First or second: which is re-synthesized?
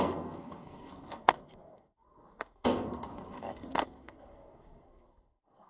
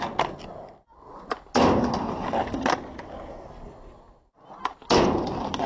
first